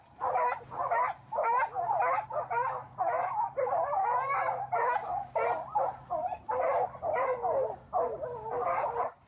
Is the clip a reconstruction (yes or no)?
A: no